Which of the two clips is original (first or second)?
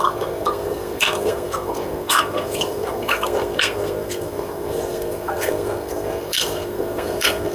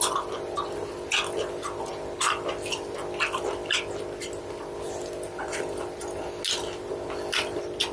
second